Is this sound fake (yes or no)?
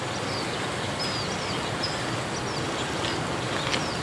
no